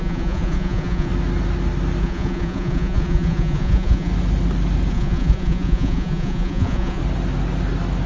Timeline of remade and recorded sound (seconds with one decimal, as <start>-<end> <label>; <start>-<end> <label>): 0.0-1.1 remade; 1.1-2.0 recorded; 2.0-4.1 remade; 4.1-4.9 recorded; 4.9-7.0 remade; 7.0-8.1 recorded